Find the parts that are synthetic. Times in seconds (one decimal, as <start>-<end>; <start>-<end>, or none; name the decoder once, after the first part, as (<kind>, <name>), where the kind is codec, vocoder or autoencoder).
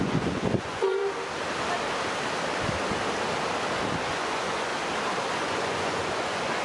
0.0-1.0 (vocoder, Vocos); 4.0-4.7; 5.3-6.6